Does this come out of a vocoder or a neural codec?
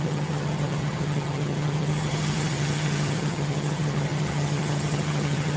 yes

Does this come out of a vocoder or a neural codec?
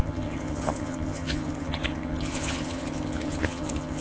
yes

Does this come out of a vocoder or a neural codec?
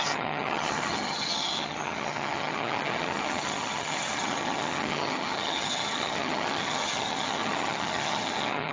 yes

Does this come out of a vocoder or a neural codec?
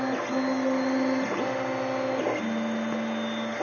no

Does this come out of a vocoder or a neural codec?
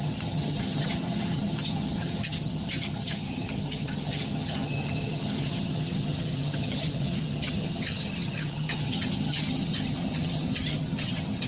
yes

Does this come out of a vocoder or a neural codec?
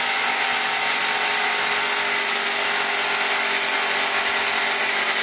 no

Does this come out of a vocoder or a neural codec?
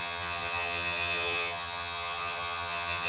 yes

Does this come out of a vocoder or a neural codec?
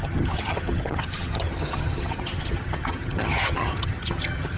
yes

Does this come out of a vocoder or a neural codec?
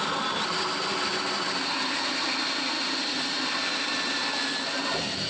no